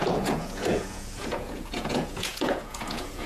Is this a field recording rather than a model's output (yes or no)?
no